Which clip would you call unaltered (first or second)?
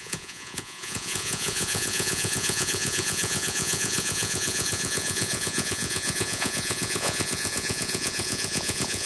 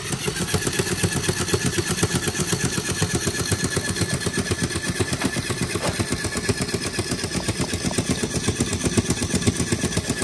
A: second